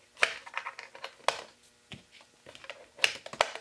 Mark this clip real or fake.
real